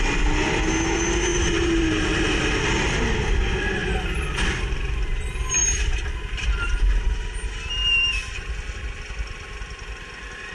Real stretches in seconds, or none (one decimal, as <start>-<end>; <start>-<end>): 0.0-1.3; 1.9-5.6; 6.5-10.5